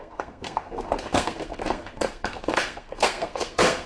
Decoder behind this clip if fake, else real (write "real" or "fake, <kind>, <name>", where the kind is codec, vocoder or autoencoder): fake, codec, SNAC